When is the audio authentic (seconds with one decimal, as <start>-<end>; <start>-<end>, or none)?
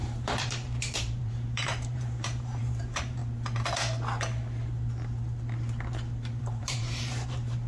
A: 3.2-6.4